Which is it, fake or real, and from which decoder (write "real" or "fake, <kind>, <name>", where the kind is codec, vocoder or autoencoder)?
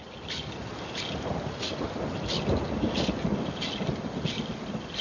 real